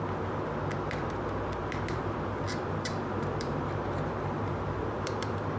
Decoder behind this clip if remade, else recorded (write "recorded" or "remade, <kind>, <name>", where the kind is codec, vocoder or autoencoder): remade, vocoder, BigVGAN v2